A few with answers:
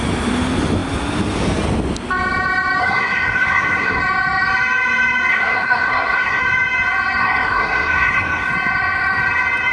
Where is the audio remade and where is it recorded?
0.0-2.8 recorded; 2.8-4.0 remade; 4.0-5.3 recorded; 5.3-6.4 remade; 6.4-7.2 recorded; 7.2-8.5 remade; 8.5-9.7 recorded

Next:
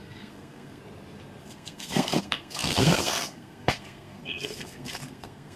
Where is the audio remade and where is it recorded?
0.0-0.8 remade; 0.8-1.4 recorded; 1.4-5.6 remade

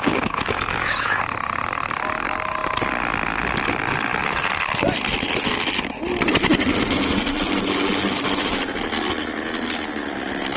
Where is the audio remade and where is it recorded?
0.0-1.2 remade; 1.2-10.6 recorded

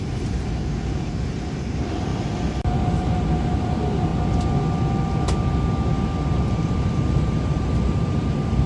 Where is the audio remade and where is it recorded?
0.0-2.1 remade; 2.1-3.0 recorded; 3.0-4.1 remade; 4.1-6.2 recorded; 6.2-8.7 remade

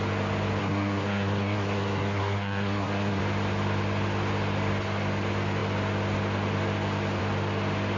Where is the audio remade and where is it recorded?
0.0-0.6 recorded; 0.6-3.2 remade; 3.2-8.0 recorded

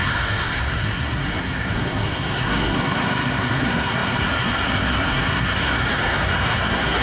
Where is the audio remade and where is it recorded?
0.0-7.0 remade